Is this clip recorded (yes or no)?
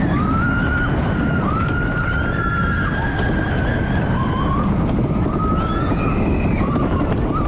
yes